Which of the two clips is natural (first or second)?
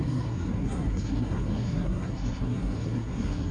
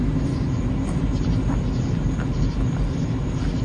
second